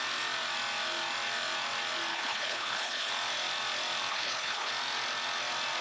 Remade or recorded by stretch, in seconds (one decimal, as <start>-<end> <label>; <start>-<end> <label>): 0.0-2.1 recorded; 2.1-3.1 remade; 3.1-4.1 recorded; 4.1-4.7 remade; 4.7-5.8 recorded